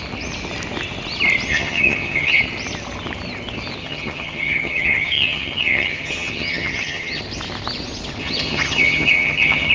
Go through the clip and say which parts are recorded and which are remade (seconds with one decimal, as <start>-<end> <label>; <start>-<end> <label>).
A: 0.0-1.5 recorded; 1.5-2.4 remade; 2.4-3.8 recorded; 3.8-7.2 remade; 7.2-8.2 recorded; 8.2-9.7 remade